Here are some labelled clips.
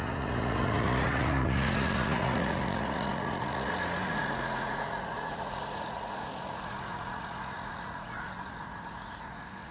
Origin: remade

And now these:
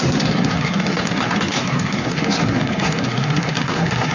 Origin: remade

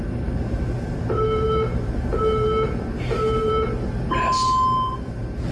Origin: remade